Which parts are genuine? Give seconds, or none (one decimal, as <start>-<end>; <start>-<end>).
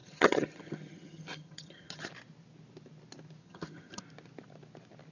2.1-3.4; 4.0-5.1